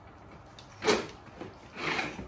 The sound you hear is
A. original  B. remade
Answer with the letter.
A